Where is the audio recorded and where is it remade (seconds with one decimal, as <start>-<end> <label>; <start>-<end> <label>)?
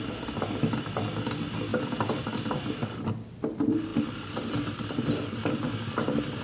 0.0-6.4 recorded